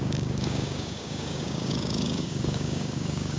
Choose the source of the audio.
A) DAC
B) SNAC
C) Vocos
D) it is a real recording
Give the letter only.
A